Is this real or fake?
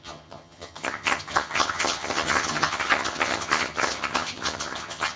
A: fake